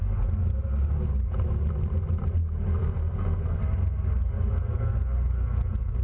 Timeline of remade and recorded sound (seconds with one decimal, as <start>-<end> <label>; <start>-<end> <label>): 0.0-2.8 recorded; 2.8-3.6 remade; 3.6-6.0 recorded